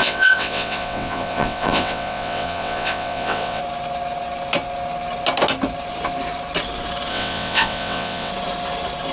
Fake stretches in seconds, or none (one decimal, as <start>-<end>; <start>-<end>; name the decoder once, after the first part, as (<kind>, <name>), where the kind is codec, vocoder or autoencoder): 0.0-3.6 (vocoder, WaveNeXt); 7.1-8.3

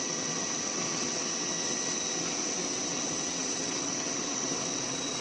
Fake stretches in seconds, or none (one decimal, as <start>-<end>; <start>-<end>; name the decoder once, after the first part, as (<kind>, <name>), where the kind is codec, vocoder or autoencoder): 0.0-5.2 (vocoder, WaveNeXt)

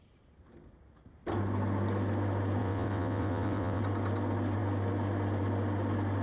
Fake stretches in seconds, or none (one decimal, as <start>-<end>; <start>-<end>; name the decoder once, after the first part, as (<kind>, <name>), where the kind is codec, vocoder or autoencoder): 2.6-3.8 (vocoder, WaveNeXt)